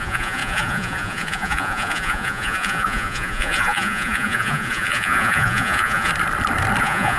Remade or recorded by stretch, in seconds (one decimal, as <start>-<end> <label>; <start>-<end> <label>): 0.0-6.1 remade; 6.1-6.8 recorded; 6.8-7.2 remade